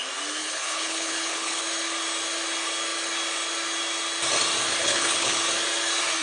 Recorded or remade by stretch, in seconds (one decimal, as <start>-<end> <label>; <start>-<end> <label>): 0.0-0.4 recorded; 0.4-1.6 remade; 1.6-4.8 recorded; 4.8-5.4 remade; 5.4-6.2 recorded